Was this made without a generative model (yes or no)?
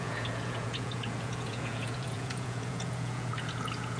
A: no